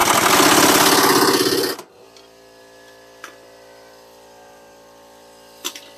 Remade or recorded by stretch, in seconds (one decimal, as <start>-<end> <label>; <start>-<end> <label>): 0.0-2.6 recorded; 2.6-6.0 remade